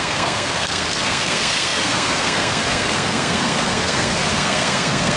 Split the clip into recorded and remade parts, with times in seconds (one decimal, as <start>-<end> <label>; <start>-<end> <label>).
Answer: 0.0-5.2 remade